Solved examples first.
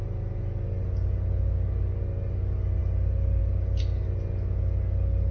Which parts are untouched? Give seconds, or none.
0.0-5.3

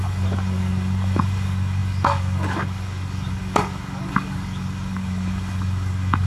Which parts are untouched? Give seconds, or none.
none

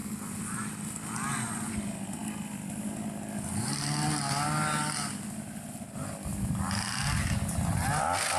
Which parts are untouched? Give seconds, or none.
0.0-8.4

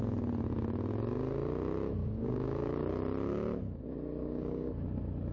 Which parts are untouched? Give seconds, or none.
0.0-2.0; 2.9-4.2; 4.7-5.3

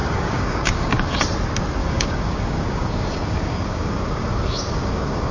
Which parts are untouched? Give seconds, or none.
1.2-1.8

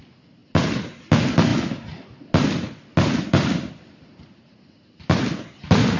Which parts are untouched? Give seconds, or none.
0.0-6.0